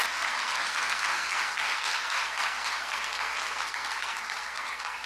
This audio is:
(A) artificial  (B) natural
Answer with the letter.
A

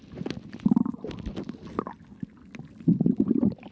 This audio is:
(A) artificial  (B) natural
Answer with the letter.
B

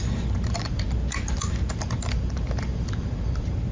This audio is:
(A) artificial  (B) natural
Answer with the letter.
B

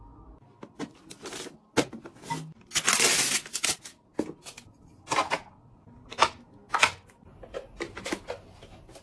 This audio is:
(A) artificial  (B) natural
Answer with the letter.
B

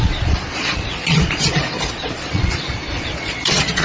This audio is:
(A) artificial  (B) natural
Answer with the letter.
A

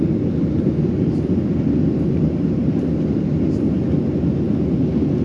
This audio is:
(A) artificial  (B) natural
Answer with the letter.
B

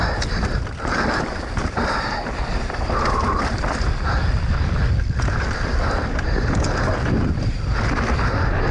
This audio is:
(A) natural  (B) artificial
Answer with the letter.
B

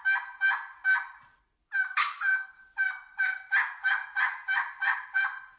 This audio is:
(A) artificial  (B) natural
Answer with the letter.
B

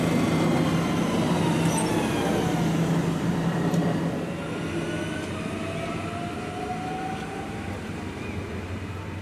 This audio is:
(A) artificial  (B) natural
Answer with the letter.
B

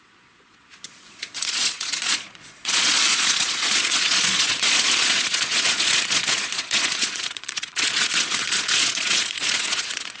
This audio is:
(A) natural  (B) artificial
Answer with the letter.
B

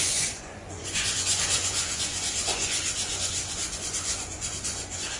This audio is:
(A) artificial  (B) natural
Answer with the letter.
A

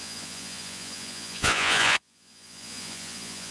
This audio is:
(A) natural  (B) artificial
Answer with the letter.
B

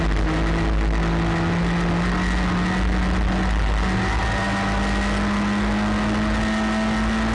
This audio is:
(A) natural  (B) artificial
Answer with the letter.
A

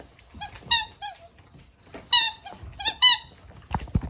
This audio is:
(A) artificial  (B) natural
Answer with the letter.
A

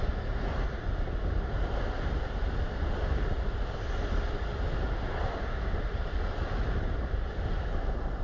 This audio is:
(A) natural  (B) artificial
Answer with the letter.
A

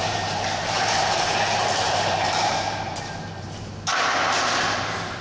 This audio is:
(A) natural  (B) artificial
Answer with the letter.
B